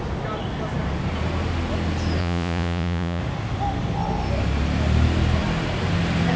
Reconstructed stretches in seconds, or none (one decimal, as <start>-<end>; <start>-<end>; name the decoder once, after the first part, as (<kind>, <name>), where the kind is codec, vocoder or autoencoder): 2.2-3.2 (vocoder, Vocos)